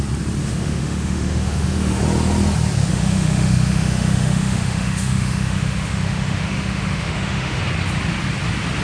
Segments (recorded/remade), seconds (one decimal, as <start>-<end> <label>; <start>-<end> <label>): 0.0-0.4 recorded; 0.4-2.0 remade; 2.0-2.9 recorded; 2.9-7.6 remade; 7.6-8.8 recorded